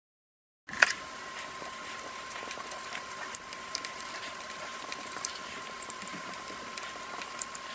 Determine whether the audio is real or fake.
real